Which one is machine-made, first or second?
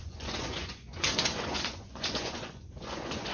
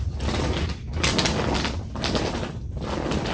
first